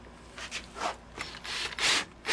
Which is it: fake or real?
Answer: real